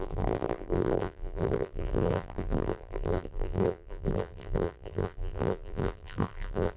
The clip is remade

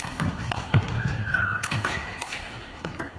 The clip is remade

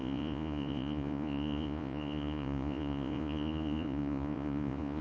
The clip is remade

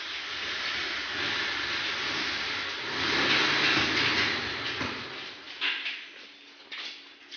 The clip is recorded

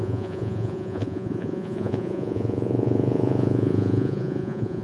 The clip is remade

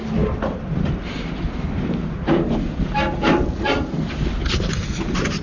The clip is recorded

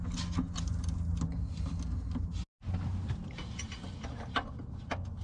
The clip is recorded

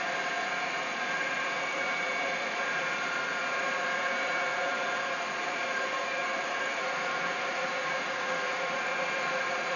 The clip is remade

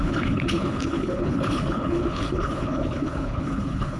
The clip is remade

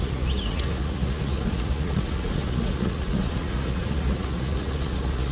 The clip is remade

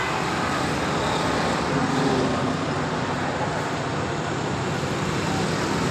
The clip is recorded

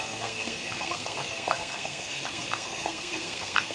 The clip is remade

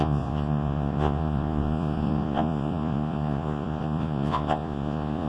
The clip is remade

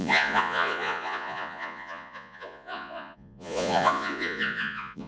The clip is remade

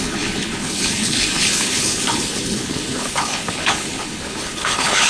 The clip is remade